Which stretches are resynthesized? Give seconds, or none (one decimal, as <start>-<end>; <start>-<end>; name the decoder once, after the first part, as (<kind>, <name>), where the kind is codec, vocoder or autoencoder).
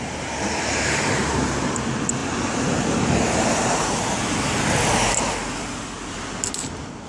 none